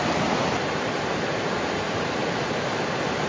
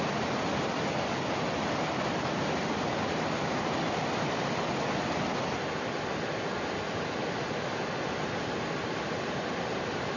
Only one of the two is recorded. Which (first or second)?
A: second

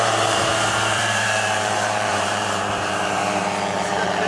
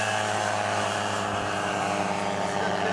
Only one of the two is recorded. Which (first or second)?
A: second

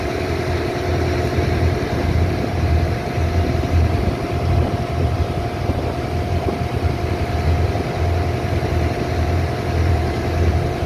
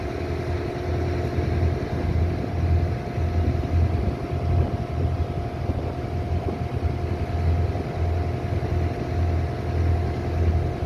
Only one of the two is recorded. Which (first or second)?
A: second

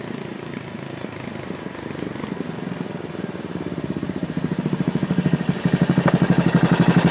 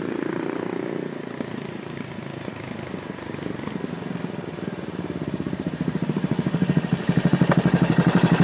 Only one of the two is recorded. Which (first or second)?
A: first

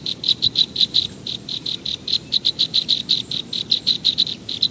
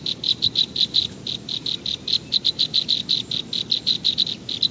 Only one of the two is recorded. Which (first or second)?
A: second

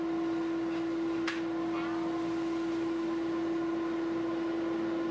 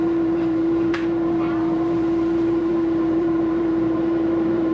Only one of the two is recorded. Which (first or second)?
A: first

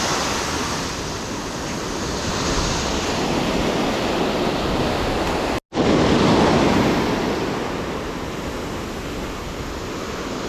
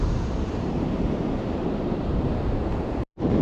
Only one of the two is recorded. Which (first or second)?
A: first